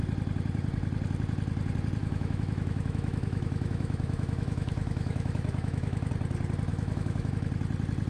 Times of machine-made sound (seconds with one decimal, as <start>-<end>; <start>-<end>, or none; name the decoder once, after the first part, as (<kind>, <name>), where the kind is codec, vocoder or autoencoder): 2.0-6.1 (autoencoder, DAC-VAE); 6.7-7.3